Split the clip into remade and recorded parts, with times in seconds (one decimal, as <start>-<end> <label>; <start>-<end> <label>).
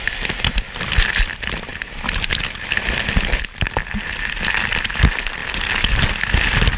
0.0-6.8 recorded